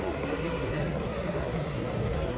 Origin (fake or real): fake